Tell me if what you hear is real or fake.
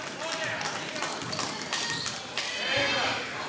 real